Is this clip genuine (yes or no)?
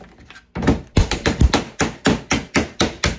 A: yes